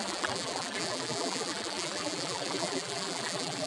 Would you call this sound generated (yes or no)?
yes